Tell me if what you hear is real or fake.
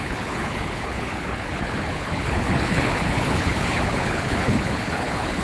fake